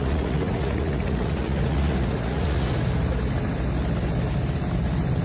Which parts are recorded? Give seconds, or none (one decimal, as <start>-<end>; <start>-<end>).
2.7-5.2